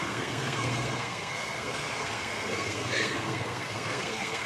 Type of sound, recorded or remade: remade